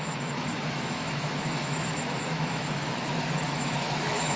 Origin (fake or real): fake